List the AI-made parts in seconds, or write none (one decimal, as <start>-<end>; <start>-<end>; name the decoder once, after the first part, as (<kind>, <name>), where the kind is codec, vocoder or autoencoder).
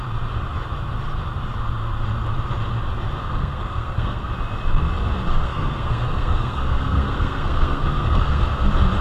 3.2-4.3 (codec, SNAC); 5.3-8.4